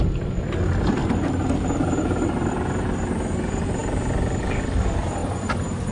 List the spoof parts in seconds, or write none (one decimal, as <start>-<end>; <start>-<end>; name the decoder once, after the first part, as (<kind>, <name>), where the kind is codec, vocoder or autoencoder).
1.0-2.5 (vocoder, BigVGAN v2); 5.2-5.9